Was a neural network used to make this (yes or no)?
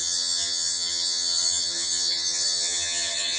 yes